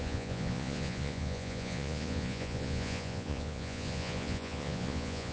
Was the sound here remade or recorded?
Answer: remade